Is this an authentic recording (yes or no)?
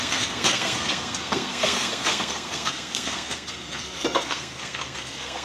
no